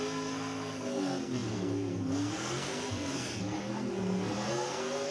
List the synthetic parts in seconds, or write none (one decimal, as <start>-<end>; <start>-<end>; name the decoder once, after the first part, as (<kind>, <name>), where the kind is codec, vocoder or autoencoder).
0.0-5.1 (codec, SNAC)